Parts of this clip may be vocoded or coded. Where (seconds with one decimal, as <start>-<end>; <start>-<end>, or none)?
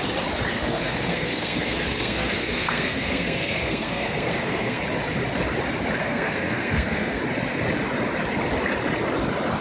0.5-4.8; 6.0-7.2